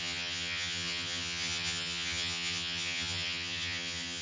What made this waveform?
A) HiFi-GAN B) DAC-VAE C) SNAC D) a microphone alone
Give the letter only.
A